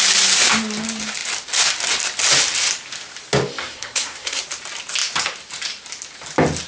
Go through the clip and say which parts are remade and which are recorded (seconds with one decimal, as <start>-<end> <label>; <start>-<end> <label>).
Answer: 0.0-3.6 recorded; 3.6-4.4 remade; 4.4-6.7 recorded